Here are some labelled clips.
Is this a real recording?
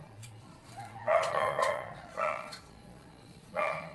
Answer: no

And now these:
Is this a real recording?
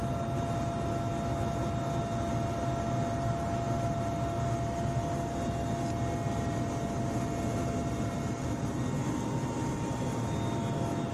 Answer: yes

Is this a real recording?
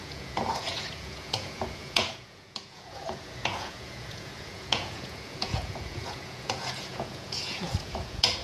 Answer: no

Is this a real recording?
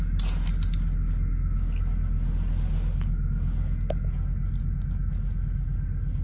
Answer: yes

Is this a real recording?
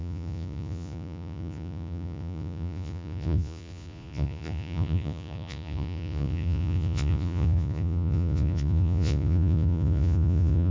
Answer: no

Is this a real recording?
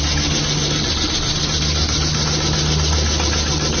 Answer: yes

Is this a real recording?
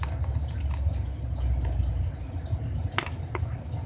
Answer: yes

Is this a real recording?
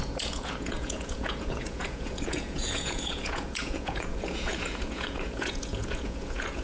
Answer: no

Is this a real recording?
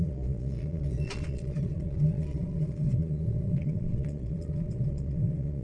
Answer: no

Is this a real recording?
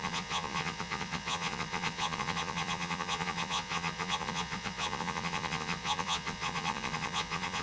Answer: no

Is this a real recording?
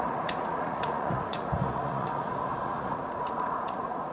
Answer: no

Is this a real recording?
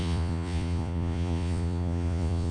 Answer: no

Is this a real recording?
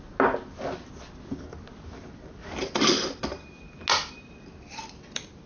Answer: yes